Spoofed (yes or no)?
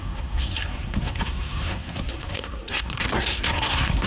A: yes